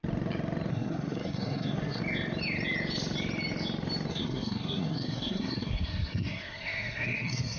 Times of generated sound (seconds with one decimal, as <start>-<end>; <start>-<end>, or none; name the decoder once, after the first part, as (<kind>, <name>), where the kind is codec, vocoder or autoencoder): 0.7-2.0 (codec, SNAC); 4.1-7.6